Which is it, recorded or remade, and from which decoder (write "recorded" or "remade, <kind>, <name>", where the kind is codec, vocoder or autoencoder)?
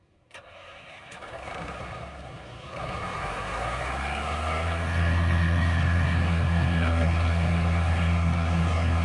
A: remade, codec, SNAC